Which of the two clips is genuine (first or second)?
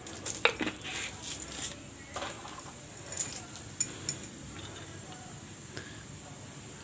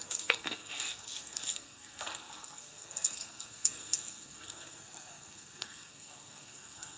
first